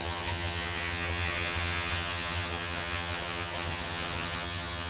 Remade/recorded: remade